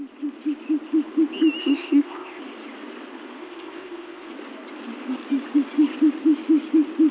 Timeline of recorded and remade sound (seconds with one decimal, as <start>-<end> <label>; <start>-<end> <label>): 0.0-1.6 recorded; 1.6-2.4 remade; 2.4-3.4 recorded; 3.4-4.3 remade; 4.3-7.1 recorded